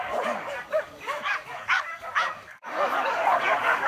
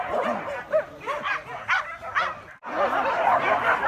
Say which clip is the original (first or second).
second